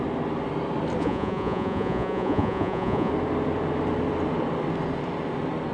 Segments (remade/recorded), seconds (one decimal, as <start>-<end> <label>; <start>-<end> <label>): 0.0-1.0 recorded; 1.0-3.1 remade; 3.1-5.7 recorded

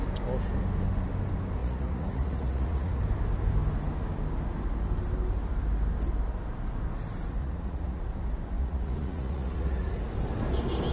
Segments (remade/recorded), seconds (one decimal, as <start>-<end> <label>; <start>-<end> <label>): 0.0-1.6 recorded; 1.6-3.0 remade; 3.0-7.4 recorded; 7.4-8.0 remade; 8.0-8.6 recorded; 8.6-9.9 remade; 9.9-10.9 recorded

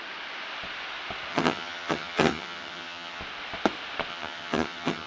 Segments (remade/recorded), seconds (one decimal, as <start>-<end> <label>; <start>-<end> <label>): 0.0-1.3 recorded; 1.3-3.2 remade; 3.2-4.1 recorded; 4.1-5.1 remade